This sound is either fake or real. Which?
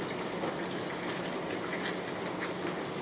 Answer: real